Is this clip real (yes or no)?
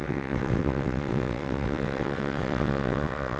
no